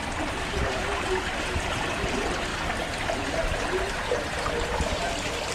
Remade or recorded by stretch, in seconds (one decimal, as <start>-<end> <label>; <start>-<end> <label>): 0.0-0.8 remade; 0.8-5.5 recorded